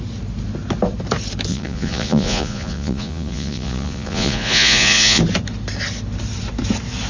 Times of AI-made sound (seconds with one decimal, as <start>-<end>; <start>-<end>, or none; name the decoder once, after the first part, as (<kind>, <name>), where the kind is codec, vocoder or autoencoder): 1.5-5.2 (vocoder, Vocos)